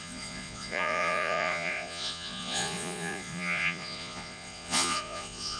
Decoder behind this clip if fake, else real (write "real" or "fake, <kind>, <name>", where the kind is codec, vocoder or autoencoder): fake, vocoder, Vocos